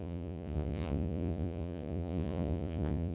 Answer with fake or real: fake